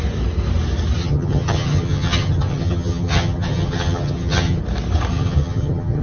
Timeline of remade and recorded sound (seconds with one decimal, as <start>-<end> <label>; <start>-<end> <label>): 0.0-1.0 recorded; 1.0-4.6 remade; 4.6-5.1 recorded; 5.1-6.0 remade